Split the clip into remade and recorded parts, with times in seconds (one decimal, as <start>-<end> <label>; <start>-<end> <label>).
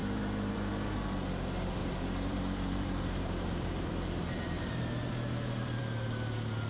0.0-0.7 remade; 0.7-1.8 recorded; 1.8-5.8 remade; 5.8-6.7 recorded